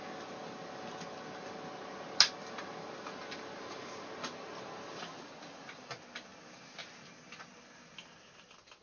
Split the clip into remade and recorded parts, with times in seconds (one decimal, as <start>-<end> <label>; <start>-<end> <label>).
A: 0.0-8.8 recorded